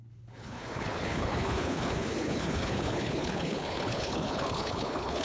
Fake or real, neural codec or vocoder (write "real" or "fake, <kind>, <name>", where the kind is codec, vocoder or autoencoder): fake, codec, HILCodec